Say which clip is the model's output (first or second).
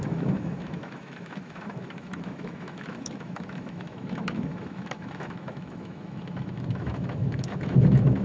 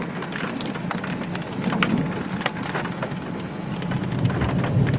first